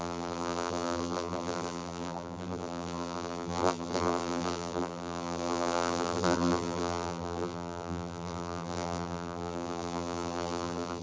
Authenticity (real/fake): fake